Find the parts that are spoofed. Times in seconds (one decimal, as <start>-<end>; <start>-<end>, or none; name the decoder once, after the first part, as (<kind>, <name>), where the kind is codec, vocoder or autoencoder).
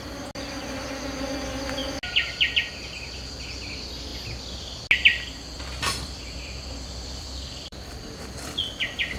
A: 5.1-8.7 (vocoder, BigVGAN v2)